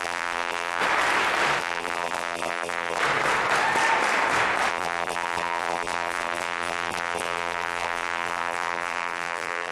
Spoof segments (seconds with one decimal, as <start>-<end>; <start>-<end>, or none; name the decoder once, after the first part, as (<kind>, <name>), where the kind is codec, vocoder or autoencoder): 0.0-0.8 (vocoder, BigVGAN v2); 1.6-3.0; 4.7-9.7